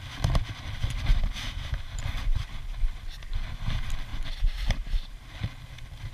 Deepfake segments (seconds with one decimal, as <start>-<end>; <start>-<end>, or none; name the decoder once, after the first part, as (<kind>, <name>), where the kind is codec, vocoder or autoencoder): 1.1-2.1 (vocoder, BigVGAN v2); 4.1-5.1